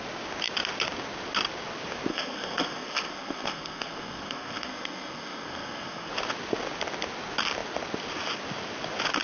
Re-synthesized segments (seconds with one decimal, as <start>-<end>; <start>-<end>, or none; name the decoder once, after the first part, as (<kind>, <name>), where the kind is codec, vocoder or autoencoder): 2.1-6.1 (codec, SNAC)